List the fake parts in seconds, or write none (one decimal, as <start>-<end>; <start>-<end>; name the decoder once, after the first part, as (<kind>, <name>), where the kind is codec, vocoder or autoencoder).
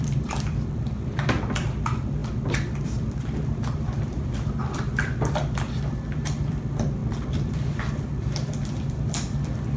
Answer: 0.0-9.8 (vocoder, BigVGAN v2)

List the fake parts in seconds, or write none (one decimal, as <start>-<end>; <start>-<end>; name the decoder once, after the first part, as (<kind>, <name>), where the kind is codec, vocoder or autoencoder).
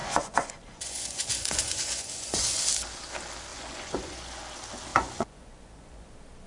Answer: 0.0-2.6 (vocoder, Vocos); 3.5-4.4; 4.9-6.1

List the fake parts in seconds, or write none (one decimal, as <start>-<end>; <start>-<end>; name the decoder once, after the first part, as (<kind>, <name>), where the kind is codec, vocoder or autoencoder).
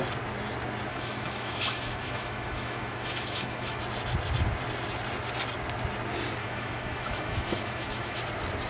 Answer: 0.9-3.8 (autoencoder, DAC-VAE); 6.4-8.2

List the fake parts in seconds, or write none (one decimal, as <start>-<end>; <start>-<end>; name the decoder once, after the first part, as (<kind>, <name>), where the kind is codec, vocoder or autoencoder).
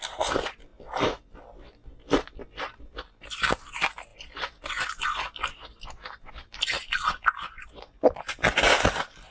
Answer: none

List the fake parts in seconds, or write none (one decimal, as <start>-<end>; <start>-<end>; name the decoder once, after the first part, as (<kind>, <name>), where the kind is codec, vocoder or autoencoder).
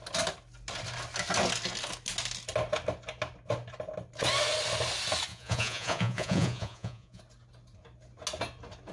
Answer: 5.3-7.2 (vocoder, Vocos)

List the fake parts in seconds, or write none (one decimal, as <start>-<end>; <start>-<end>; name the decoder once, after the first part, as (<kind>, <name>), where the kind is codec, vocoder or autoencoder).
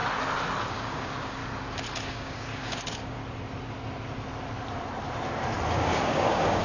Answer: 0.7-1.4 (codec, DAC); 2.0-3.2; 5.7-6.6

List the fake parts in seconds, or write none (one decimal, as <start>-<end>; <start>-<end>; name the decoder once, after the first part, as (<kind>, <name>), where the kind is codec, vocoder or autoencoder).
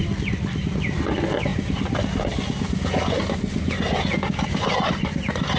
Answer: none